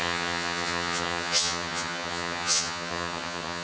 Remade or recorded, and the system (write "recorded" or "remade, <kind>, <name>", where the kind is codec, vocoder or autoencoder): remade, vocoder, HiFi-GAN